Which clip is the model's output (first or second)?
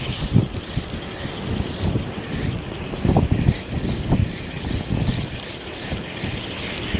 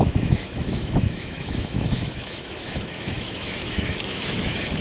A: second